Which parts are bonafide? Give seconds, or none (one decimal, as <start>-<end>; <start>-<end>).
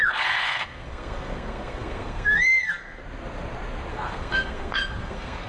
3.0-3.9